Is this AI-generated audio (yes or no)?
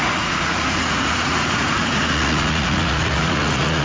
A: yes